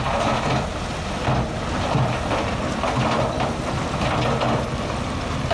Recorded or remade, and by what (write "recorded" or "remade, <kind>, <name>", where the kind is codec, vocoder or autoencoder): recorded